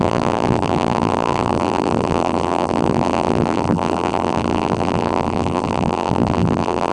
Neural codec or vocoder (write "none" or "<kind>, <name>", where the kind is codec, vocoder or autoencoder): vocoder, BigVGAN v2